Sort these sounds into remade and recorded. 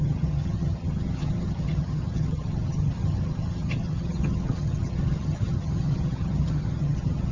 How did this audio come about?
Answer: remade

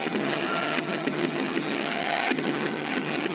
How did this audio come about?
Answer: remade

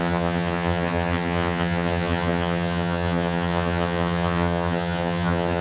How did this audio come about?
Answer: remade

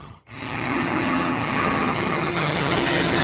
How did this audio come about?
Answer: remade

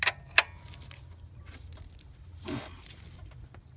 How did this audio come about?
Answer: recorded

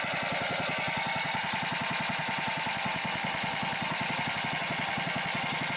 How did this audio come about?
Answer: recorded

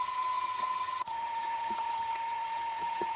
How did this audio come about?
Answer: remade